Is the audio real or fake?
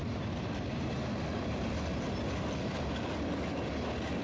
real